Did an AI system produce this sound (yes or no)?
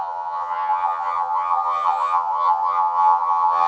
yes